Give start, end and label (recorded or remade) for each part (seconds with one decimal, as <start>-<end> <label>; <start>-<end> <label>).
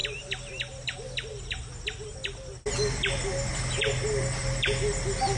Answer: 0.0-5.4 recorded